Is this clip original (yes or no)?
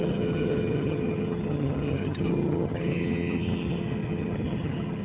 no